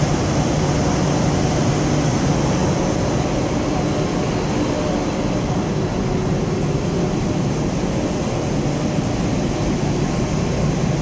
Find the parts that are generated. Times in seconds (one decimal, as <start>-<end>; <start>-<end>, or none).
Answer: none